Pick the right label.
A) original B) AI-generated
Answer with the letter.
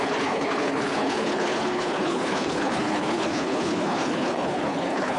B